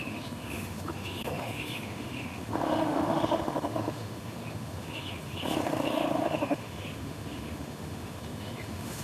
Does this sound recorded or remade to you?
remade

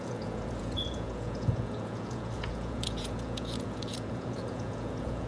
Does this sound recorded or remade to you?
remade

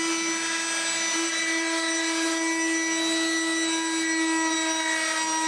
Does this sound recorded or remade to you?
recorded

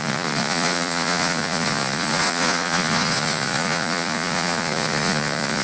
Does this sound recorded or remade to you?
remade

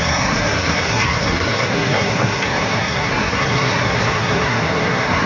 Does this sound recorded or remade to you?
remade